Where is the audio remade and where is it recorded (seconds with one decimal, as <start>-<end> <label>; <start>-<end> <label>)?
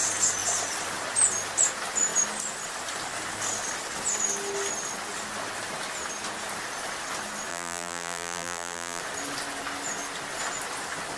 0.0-7.5 recorded; 7.5-9.0 remade; 9.0-11.2 recorded